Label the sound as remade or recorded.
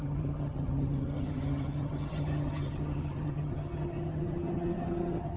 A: remade